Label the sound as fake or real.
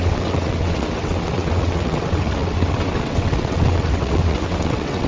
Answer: fake